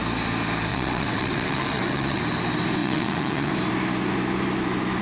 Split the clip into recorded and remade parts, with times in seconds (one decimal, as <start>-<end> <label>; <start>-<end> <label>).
0.0-0.7 recorded; 0.7-2.2 remade; 2.2-2.8 recorded; 2.8-3.5 remade; 3.5-5.0 recorded